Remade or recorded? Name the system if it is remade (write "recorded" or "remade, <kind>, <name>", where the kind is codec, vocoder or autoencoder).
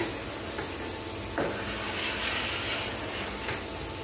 recorded